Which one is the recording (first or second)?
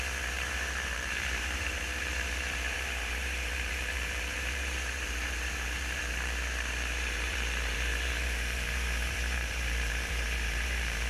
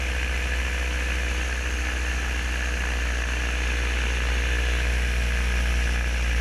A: second